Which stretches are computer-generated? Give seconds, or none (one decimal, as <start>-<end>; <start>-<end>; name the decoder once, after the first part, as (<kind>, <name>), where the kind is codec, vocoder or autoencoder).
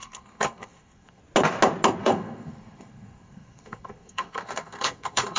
0.0-1.2 (codec, SNAC); 2.0-5.4